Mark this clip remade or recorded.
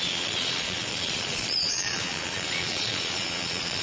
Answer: remade